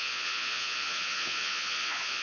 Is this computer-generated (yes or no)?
yes